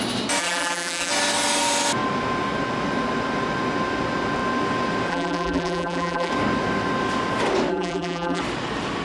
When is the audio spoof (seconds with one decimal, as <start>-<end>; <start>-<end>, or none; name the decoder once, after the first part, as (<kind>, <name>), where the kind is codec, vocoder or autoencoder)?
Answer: 0.4-1.1 (vocoder, BigVGAN v2); 5.1-6.3; 7.7-8.4